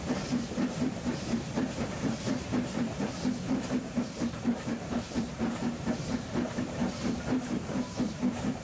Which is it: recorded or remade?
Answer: remade